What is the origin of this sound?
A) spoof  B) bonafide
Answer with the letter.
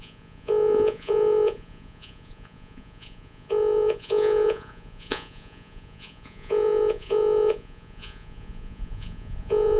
A